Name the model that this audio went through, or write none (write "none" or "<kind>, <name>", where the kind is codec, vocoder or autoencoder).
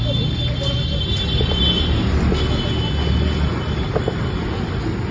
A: none